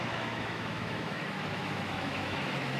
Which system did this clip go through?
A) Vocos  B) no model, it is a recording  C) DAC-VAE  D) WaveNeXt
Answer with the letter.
C